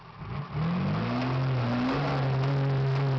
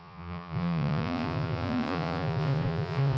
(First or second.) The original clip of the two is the first